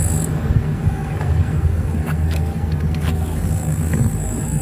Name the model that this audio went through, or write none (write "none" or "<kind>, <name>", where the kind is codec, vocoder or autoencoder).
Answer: codec, SNAC